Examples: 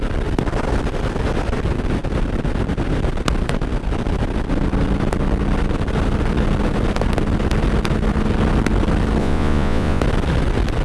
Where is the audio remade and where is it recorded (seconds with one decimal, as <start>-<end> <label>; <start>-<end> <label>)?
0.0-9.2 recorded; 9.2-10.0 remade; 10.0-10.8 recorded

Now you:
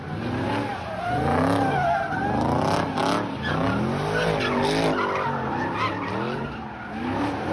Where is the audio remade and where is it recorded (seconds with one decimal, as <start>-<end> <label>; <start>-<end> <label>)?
0.0-7.5 recorded

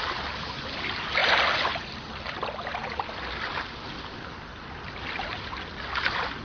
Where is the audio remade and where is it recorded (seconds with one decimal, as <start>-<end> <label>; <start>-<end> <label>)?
0.0-6.4 recorded